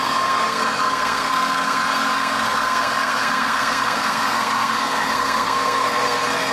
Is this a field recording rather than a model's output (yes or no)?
no